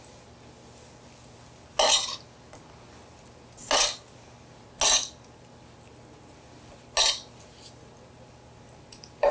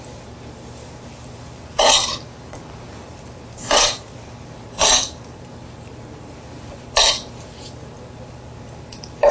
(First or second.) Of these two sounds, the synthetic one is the second